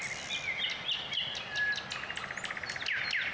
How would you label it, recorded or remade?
recorded